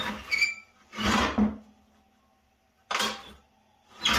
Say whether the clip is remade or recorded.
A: recorded